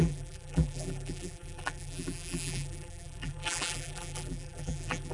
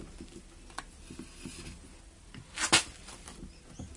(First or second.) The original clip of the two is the second